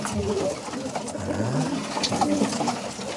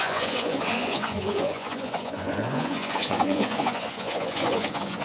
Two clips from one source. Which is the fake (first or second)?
second